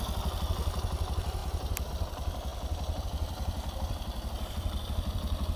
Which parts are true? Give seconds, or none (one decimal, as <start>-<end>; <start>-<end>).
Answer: 2.5-3.0